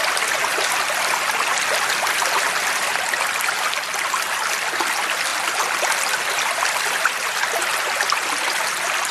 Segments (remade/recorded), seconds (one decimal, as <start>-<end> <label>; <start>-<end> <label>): 0.0-1.5 recorded; 1.5-2.9 remade; 2.9-5.3 recorded; 5.3-9.1 remade